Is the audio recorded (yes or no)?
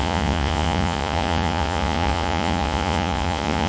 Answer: no